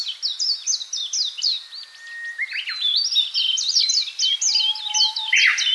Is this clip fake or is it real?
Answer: real